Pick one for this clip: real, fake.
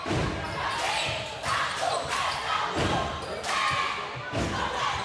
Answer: real